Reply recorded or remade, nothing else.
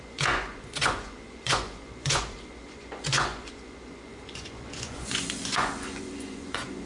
remade